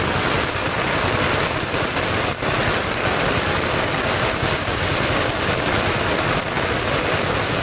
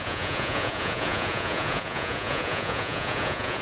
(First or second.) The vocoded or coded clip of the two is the second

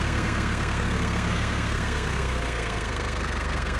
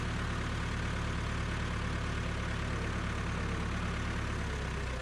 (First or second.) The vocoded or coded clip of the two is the first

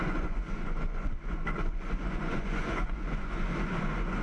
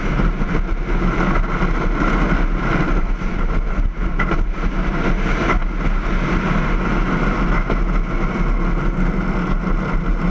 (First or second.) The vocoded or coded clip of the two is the first